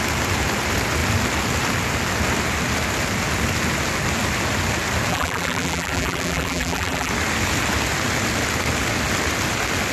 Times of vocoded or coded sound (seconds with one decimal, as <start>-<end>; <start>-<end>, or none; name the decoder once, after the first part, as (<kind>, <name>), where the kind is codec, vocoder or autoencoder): 5.1-7.1 (vocoder, BigVGAN v2)

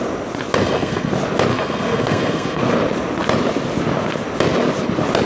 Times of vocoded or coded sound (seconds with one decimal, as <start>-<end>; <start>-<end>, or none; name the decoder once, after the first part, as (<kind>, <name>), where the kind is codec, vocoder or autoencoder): 0.6-1.1 (codec, SNAC); 1.5-2.6

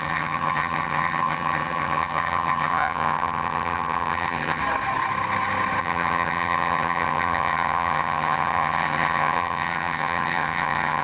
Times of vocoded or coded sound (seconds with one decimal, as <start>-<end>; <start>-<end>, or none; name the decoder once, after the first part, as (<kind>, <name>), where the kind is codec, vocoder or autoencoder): 0.0-4.6 (vocoder, HiFi-GAN); 5.8-11.0

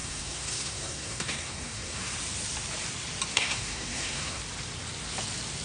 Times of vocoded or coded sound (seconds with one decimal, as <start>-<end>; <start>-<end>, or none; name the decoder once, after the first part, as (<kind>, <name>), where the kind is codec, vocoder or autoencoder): 0.0-2.1 (codec, SNAC); 3.3-4.4

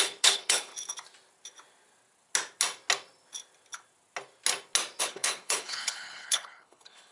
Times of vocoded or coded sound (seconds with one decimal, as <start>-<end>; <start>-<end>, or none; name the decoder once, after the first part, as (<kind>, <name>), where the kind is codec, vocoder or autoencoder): 0.0-0.7 (codec, HILCodec); 5.0-7.1